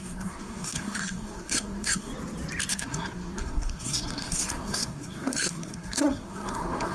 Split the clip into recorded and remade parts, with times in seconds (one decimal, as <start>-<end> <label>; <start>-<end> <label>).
0.0-2.1 remade; 2.1-2.7 recorded; 2.7-6.9 remade